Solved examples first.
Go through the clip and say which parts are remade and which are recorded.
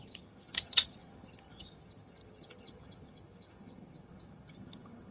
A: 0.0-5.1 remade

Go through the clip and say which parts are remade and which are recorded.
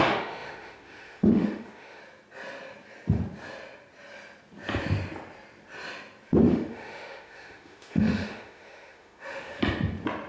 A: 0.0-2.0 remade; 2.0-6.5 recorded; 6.5-9.6 remade; 9.6-10.3 recorded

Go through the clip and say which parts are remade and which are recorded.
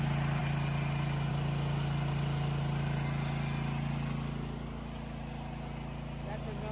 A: 0.0-6.7 recorded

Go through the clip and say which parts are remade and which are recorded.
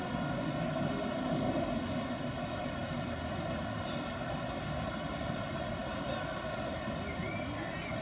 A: 0.0-8.0 recorded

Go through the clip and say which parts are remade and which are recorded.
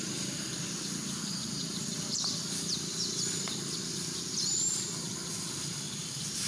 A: 0.0-1.8 recorded; 1.8-5.7 remade; 5.7-6.5 recorded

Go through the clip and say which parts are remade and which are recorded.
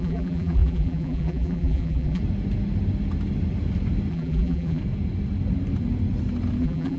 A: 0.0-2.2 remade; 2.2-4.1 recorded; 4.1-4.8 remade; 4.8-6.6 recorded; 6.6-7.0 remade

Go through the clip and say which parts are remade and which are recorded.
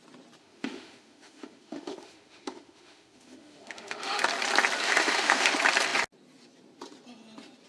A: 0.0-0.4 recorded; 0.4-4.2 remade; 4.2-4.8 recorded; 4.8-5.5 remade; 5.5-7.7 recorded